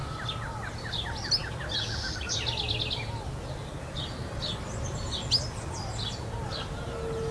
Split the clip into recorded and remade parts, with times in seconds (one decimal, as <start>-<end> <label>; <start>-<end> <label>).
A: 0.0-7.3 recorded